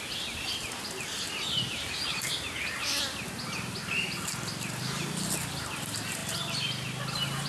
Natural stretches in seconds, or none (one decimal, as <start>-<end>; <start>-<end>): 0.0-7.5